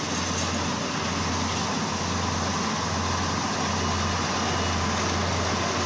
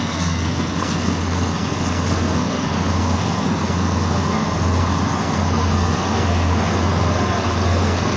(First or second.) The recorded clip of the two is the first